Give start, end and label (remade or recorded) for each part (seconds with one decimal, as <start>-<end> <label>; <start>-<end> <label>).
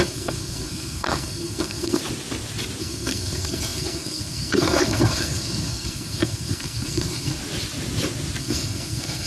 0.0-2.0 remade; 2.0-2.8 recorded; 2.8-7.4 remade; 7.4-8.4 recorded; 8.4-9.3 remade